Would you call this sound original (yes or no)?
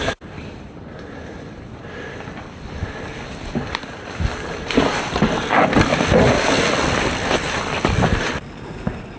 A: yes